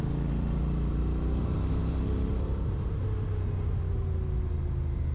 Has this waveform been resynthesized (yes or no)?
no